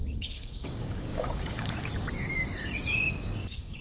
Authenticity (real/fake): fake